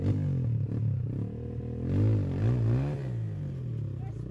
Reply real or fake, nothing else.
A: real